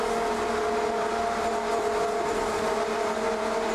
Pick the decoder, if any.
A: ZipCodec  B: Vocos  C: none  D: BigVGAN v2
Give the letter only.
C